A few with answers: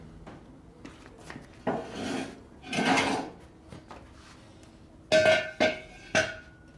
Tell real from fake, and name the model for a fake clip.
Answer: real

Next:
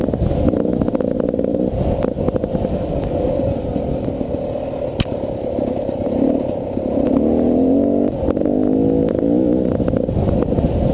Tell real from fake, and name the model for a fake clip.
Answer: real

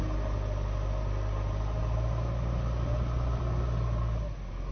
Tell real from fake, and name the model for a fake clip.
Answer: real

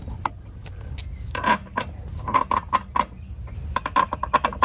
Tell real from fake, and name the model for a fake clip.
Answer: real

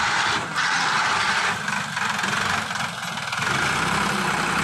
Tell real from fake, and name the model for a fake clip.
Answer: real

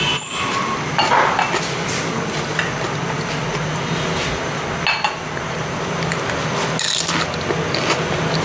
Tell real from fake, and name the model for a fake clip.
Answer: real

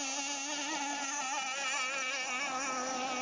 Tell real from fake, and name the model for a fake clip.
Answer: real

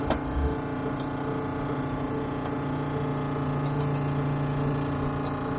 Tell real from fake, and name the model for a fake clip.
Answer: real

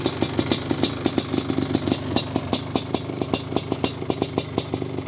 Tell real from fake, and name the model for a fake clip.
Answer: real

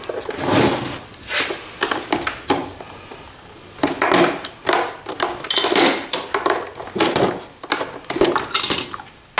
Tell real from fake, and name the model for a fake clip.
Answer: real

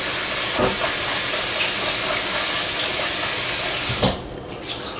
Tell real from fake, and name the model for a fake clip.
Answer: real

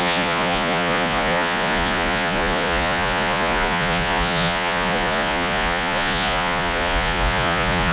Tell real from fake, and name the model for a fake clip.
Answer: fake, vocoder, Vocos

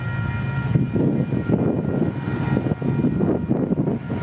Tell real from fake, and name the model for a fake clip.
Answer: real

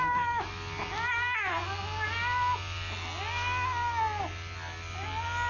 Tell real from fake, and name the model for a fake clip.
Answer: real